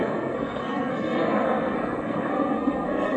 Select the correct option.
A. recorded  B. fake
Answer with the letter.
B